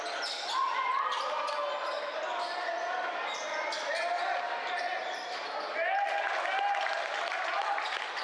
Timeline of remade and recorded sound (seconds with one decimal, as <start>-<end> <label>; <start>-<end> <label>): 0.0-8.2 recorded